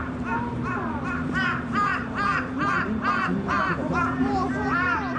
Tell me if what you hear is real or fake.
fake